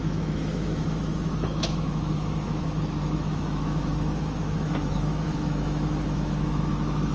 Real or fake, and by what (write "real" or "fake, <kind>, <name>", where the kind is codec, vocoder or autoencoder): fake, autoencoder, DAC-VAE